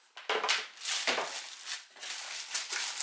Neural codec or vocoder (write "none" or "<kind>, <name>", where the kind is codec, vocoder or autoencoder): none